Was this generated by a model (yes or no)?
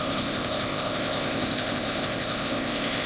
yes